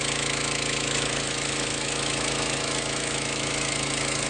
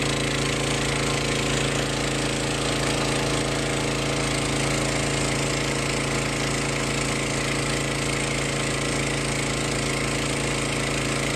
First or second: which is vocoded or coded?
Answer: first